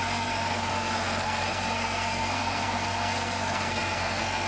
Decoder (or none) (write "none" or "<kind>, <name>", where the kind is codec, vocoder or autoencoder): codec, SNAC